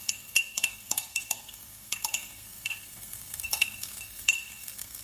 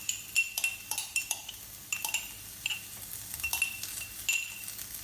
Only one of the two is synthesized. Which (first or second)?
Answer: first